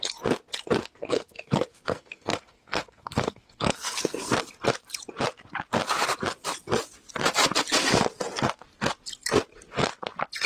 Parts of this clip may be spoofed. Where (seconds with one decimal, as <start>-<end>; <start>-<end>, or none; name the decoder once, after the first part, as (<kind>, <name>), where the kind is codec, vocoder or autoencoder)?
0.8-4.3 (codec, SNAC)